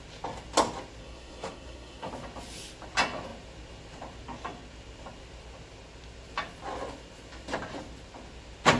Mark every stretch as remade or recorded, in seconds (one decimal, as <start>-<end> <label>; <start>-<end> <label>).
0.0-1.0 recorded; 1.0-2.1 remade; 2.1-8.8 recorded